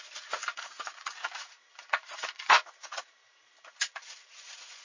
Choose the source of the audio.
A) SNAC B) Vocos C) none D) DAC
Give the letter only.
B